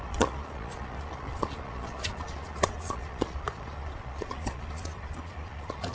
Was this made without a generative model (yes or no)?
no